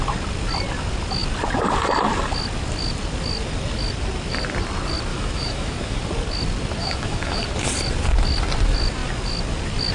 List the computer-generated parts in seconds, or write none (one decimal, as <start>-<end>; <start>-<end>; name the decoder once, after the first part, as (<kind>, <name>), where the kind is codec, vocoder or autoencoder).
5.1-6.0 (autoencoder, DAC-VAE); 6.8-7.4

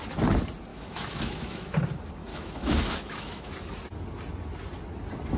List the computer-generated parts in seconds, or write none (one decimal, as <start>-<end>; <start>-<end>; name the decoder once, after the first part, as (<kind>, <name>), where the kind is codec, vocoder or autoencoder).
0.7-1.8 (autoencoder, DAC-VAE); 2.3-3.5

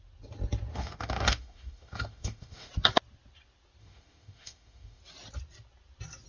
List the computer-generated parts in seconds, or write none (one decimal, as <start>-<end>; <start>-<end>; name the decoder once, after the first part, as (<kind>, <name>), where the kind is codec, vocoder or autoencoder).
0.7-2.7 (autoencoder, DAC-VAE); 3.8-5.0

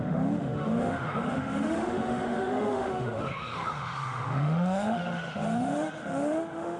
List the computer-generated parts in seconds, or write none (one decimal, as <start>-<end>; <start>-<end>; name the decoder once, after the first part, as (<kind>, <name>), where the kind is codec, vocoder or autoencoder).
0.0-6.8 (autoencoder, DAC-VAE)

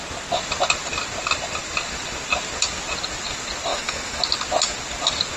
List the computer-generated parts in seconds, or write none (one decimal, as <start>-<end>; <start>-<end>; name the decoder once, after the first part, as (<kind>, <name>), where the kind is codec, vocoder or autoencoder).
3.7-4.2 (autoencoder, DAC-VAE)

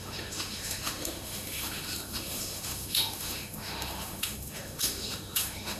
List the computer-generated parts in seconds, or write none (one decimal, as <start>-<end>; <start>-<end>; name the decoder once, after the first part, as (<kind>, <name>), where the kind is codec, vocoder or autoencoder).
0.0-5.8 (autoencoder, DAC-VAE)

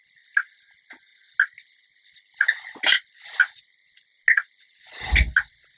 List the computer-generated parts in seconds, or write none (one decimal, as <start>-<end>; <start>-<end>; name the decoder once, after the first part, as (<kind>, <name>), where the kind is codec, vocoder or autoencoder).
none

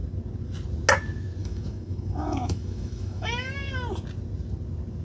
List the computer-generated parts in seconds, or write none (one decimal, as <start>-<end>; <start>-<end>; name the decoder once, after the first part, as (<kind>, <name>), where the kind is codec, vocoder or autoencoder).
1.4-3.7 (autoencoder, DAC-VAE)